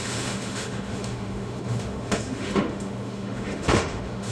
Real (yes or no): no